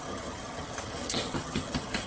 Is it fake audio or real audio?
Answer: fake